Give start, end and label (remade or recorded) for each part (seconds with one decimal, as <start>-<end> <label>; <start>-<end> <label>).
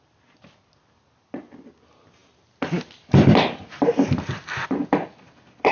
0.0-5.7 recorded